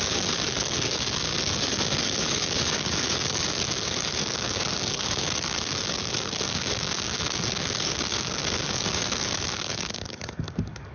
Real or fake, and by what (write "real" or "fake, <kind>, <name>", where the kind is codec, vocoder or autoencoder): fake, codec, DAC